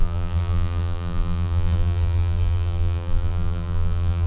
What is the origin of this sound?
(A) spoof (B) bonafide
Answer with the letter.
A